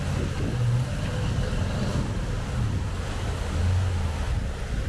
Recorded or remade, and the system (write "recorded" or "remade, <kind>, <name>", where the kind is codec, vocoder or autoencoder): recorded